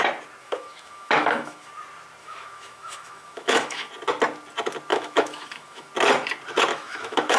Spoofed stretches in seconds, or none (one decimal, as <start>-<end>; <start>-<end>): 0.4-1.7; 2.2-3.9; 4.9-5.9; 6.7-7.4